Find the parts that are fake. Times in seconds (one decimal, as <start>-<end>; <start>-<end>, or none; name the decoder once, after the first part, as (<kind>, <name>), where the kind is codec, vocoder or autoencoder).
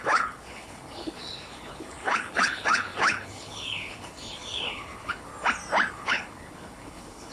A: 0.0-5.3 (codec, HILCodec); 5.9-7.3